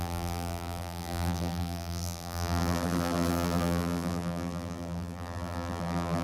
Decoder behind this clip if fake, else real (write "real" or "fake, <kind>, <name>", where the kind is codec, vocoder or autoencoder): fake, vocoder, BigVGAN v2